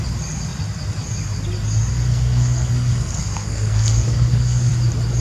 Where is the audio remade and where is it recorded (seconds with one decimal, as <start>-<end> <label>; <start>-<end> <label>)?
0.0-1.9 recorded; 1.9-4.7 remade; 4.7-5.2 recorded